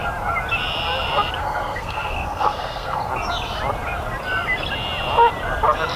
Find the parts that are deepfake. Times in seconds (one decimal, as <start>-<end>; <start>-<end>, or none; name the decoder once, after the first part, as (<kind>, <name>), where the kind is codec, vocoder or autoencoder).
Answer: 1.4-3.1 (codec, SNAC)

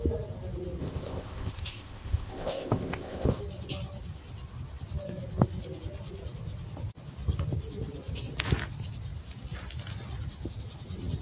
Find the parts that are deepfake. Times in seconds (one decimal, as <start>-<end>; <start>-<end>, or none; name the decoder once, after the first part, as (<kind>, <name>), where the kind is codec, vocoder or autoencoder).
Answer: 0.8-3.4 (codec, ZipCodec)

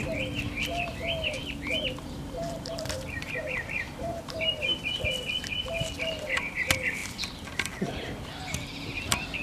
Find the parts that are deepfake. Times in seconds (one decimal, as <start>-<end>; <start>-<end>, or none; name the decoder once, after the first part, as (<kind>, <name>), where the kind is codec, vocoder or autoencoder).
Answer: 1.4-5.0 (vocoder, BigVGAN v2)

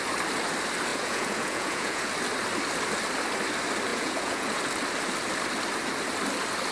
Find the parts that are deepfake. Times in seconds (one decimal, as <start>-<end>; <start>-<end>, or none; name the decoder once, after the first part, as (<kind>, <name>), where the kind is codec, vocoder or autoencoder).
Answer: 0.9-2.1 (vocoder, Vocos); 3.9-4.6

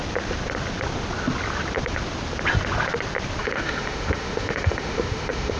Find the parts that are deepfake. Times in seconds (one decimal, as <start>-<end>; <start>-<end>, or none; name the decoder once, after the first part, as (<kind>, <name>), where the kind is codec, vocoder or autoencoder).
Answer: 3.4-5.6 (autoencoder, DAC-VAE)

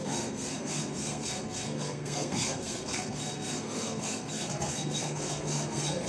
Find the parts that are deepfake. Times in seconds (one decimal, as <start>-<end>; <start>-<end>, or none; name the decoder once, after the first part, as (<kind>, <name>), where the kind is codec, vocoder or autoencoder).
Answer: 0.0-6.1 (codec, SNAC)

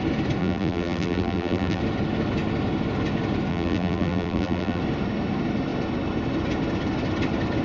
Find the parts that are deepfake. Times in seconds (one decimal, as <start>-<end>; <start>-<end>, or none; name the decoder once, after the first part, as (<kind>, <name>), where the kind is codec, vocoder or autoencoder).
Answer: 0.4-1.8 (vocoder, BigVGAN v2); 3.5-4.8